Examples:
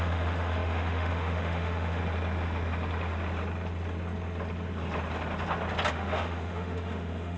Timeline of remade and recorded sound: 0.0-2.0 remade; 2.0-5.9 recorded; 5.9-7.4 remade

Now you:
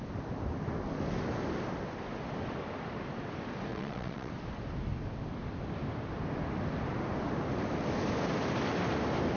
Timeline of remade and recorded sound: 0.0-3.7 recorded; 3.7-4.3 remade; 4.3-9.4 recorded

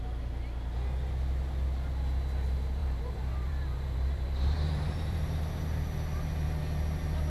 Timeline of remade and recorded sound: 0.0-2.8 recorded; 2.8-5.3 remade; 5.3-7.3 recorded

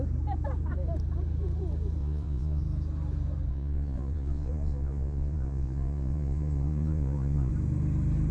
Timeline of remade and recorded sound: 0.0-2.0 recorded; 2.0-2.6 remade; 2.6-3.5 recorded; 3.5-7.5 remade; 7.5-8.3 recorded

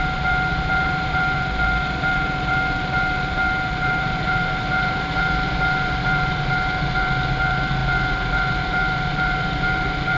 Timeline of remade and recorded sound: 0.0-10.2 remade